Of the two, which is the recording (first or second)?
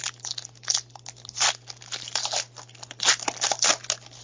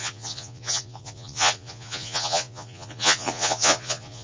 first